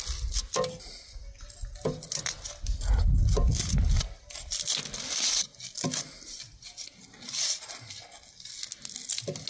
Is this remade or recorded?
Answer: recorded